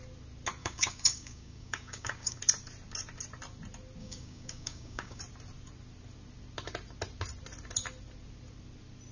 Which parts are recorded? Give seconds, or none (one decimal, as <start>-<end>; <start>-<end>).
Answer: 0.0-0.6; 2.4-4.0; 5.2-9.1